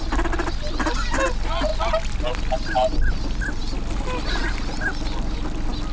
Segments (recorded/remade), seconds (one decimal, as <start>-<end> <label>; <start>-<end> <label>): 0.0-5.9 recorded